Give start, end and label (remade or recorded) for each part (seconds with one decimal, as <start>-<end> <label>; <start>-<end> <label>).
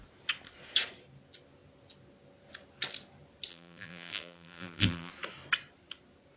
0.0-3.5 recorded; 3.5-5.1 remade; 5.1-6.4 recorded